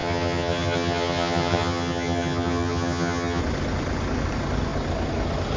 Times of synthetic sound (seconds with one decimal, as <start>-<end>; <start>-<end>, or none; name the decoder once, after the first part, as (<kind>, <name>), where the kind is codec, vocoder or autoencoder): 0.0-3.4 (vocoder, HiFi-GAN)